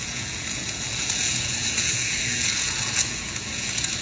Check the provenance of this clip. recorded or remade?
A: remade